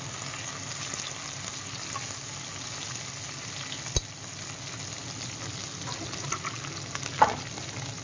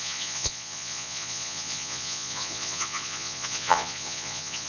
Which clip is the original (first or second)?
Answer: first